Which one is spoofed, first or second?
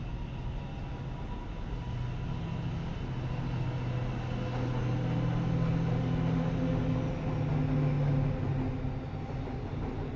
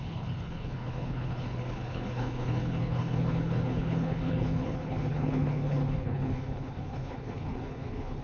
second